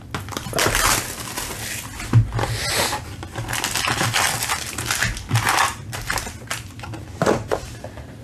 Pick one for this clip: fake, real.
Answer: real